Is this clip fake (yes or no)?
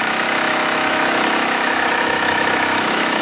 yes